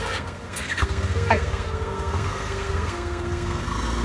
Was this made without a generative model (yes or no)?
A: no